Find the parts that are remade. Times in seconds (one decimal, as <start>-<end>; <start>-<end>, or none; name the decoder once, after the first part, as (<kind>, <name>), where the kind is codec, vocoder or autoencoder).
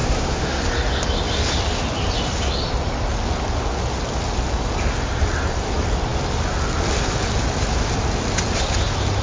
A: 0.0-0.6 (codec, SNAC)